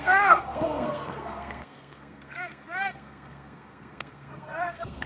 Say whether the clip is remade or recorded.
remade